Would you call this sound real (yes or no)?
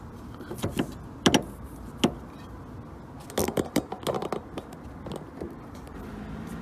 yes